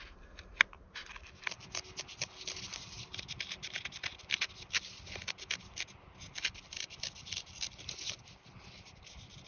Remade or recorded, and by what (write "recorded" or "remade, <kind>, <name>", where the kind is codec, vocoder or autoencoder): recorded